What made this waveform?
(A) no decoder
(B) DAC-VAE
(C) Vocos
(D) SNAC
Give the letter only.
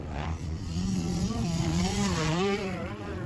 C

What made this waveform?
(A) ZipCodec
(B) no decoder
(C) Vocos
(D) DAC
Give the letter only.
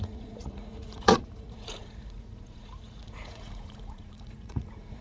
C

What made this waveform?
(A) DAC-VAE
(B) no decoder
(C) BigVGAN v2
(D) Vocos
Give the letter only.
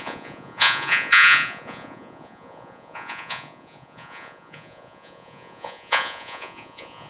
D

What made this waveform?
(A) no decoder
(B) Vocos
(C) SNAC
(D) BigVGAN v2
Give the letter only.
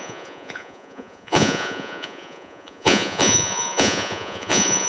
B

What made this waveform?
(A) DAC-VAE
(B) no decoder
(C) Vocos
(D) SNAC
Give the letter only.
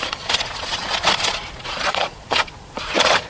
C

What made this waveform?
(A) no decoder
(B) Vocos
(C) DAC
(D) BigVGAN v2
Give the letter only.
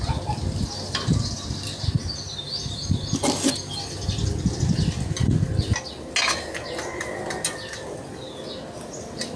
A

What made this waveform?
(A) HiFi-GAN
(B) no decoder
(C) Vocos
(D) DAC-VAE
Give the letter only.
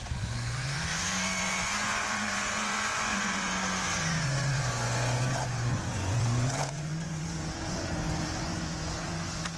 C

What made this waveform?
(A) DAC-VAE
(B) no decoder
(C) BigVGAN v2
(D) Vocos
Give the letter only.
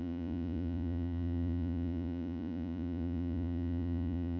D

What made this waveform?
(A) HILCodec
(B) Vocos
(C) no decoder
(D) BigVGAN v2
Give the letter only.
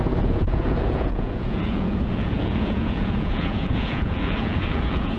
B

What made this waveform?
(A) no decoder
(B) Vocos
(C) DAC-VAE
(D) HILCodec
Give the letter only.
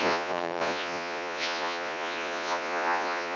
B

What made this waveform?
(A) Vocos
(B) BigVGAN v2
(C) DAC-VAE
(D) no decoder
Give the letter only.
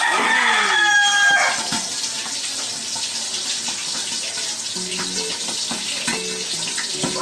D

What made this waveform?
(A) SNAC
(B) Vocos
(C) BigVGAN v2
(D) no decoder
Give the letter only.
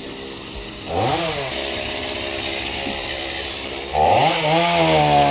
D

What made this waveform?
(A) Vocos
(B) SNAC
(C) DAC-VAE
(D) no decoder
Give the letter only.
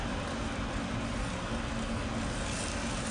D